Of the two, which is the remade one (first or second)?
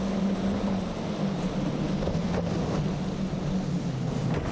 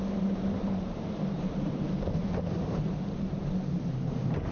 second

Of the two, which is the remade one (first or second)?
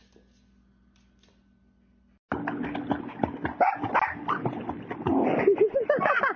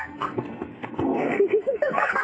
second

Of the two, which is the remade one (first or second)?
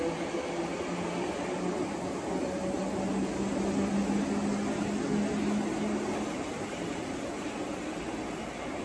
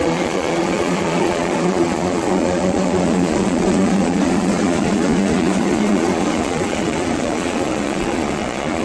second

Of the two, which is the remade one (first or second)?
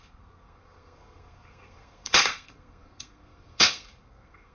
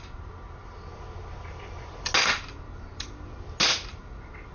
first